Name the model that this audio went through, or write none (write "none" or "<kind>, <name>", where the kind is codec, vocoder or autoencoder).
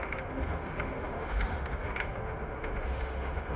autoencoder, DAC-VAE